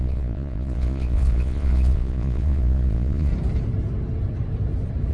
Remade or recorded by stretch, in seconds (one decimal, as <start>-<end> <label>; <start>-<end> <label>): 0.0-3.3 remade; 3.3-5.1 recorded